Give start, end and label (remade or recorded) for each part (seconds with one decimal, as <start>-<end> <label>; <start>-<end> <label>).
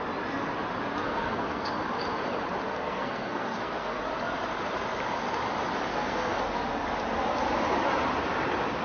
0.0-1.0 recorded; 1.0-1.7 remade; 1.7-2.7 recorded; 2.7-4.0 remade; 4.0-5.9 recorded; 5.9-6.4 remade; 6.4-8.8 recorded